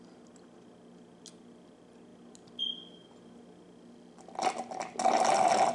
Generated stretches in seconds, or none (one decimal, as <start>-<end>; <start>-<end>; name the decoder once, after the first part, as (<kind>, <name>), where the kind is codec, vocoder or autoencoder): none

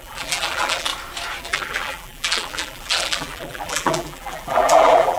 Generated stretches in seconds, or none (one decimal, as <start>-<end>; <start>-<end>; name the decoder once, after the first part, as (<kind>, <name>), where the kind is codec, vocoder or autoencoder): 0.0-0.9 (vocoder, BigVGAN v2); 1.4-5.2

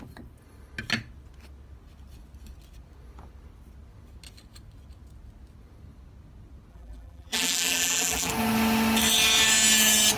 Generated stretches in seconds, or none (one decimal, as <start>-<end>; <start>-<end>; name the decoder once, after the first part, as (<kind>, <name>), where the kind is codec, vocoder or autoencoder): 6.7-8.3 (vocoder, BigVGAN v2)

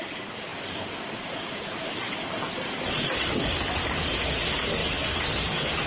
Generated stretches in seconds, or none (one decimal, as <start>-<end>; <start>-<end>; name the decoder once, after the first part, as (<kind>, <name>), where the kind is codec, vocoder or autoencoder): none

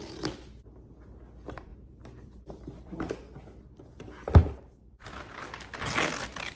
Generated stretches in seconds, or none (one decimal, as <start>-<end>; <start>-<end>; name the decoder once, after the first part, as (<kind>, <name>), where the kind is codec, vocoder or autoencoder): 1.7-3.1 (vocoder, BigVGAN v2); 4.4-5.4

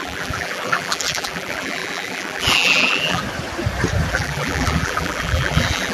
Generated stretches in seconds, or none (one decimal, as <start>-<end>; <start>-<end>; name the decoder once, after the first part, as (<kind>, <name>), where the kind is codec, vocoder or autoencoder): 0.0-3.2 (vocoder, BigVGAN v2); 4.1-5.9

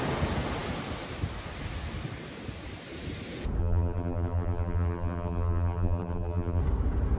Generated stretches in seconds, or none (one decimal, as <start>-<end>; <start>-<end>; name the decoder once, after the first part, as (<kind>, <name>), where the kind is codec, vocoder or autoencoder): 3.6-6.6 (vocoder, BigVGAN v2)

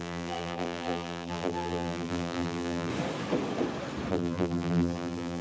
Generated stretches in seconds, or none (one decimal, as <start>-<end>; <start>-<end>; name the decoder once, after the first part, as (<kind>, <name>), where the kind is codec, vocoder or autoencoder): 0.0-2.9 (vocoder, BigVGAN v2); 4.1-5.4